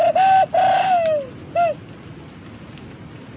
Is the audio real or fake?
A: real